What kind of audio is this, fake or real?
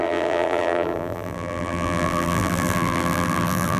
fake